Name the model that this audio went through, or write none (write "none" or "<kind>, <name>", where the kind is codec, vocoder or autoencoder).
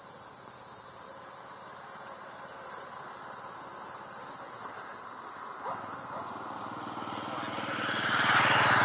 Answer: none